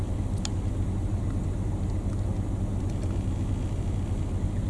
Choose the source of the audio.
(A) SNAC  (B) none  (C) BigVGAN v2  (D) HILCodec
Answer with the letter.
B